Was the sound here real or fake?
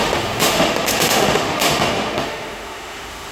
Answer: fake